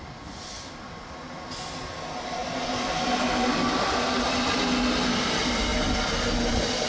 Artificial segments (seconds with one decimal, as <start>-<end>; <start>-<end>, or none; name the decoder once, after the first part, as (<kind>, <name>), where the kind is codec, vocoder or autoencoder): none